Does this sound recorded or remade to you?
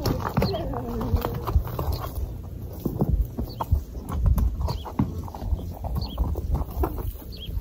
recorded